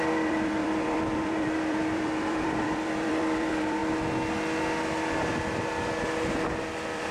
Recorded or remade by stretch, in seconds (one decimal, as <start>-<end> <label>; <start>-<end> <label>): 0.0-3.8 remade; 3.8-6.6 recorded; 6.6-7.1 remade